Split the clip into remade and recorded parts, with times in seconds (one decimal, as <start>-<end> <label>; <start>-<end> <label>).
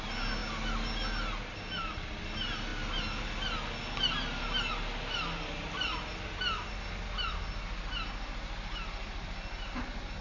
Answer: 0.0-10.2 recorded